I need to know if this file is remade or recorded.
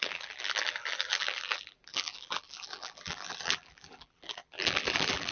remade